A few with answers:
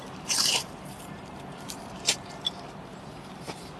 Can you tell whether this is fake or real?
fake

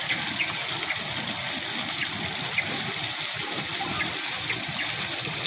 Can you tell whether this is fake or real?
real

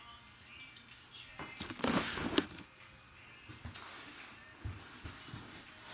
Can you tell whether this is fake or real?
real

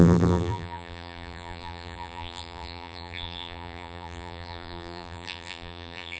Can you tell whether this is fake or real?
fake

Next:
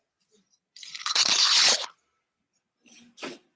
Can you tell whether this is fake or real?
real